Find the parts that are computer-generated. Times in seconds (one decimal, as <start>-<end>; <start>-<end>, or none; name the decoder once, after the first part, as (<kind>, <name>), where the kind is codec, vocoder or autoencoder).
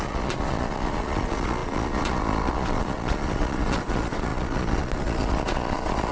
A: 0.0-6.1 (vocoder, Vocos)